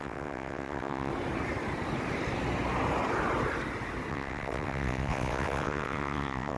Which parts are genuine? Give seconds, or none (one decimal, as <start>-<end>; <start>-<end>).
1.1-4.1